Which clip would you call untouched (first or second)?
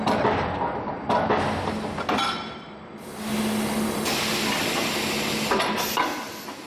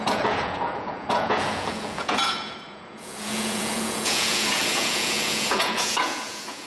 first